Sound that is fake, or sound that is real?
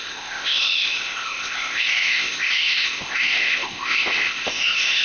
fake